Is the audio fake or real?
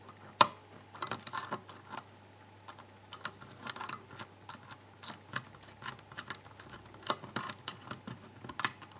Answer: real